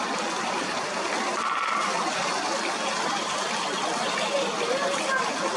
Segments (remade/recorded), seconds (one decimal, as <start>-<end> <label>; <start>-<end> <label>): 0.0-5.6 recorded